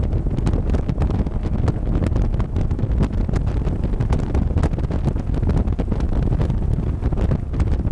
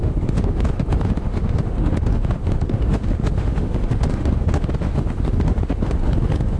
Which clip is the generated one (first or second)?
second